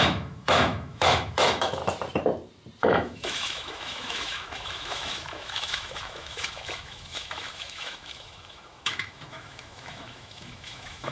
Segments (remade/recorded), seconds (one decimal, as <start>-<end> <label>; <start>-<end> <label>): 0.0-1.8 remade; 1.8-2.8 recorded; 2.8-11.1 remade